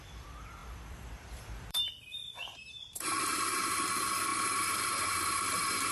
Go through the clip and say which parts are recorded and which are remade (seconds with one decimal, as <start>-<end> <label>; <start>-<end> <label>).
0.0-5.9 remade